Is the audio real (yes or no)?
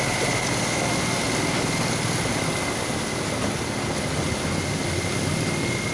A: yes